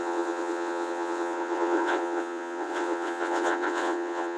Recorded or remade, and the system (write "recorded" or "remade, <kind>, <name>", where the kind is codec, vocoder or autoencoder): remade, vocoder, WaveNeXt